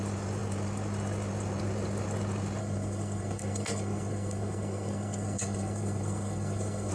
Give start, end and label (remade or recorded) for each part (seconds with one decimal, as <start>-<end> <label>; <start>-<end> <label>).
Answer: 0.0-2.6 recorded; 2.6-6.9 remade